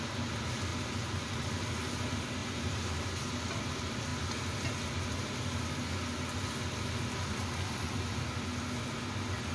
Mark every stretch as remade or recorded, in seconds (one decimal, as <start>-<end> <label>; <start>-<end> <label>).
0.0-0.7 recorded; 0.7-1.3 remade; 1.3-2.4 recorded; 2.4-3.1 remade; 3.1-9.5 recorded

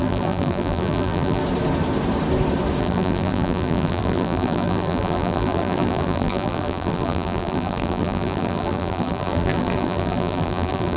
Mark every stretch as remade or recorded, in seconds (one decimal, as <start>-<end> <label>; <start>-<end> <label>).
0.0-1.4 remade; 1.4-2.8 recorded; 2.8-11.0 remade

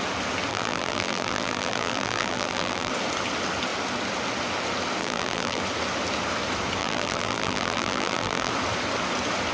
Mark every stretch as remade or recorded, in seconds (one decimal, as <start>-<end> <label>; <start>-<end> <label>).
0.0-0.5 recorded; 0.5-2.9 remade; 2.9-5.0 recorded; 5.0-5.6 remade; 5.6-6.8 recorded; 6.8-8.5 remade; 8.5-9.5 recorded

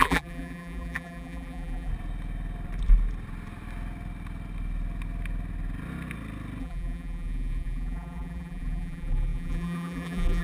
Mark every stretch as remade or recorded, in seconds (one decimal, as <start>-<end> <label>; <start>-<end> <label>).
0.0-1.9 remade; 1.9-6.6 recorded; 6.6-10.4 remade

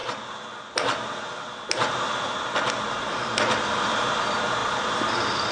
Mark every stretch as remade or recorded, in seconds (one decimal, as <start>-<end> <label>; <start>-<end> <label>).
0.0-3.0 recorded; 3.0-5.5 remade

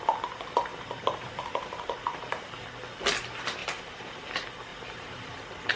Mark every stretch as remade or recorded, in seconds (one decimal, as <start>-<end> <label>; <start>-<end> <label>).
0.0-0.7 recorded; 0.7-2.5 remade; 2.5-3.6 recorded; 3.6-4.2 remade; 4.2-4.7 recorded; 4.7-5.3 remade; 5.3-5.8 recorded